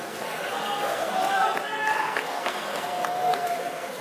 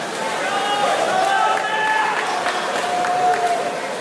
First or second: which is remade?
first